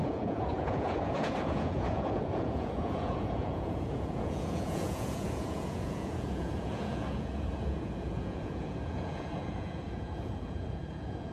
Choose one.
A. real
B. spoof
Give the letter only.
B